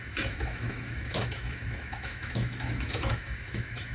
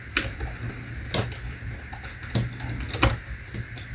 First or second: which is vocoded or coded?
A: first